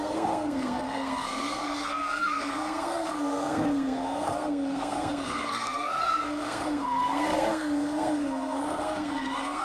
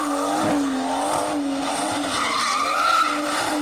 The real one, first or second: second